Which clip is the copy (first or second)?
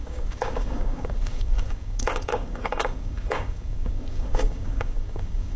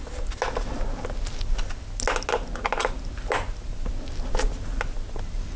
first